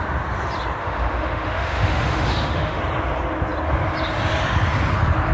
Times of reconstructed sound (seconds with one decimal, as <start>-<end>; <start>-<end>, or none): 0.8-2.8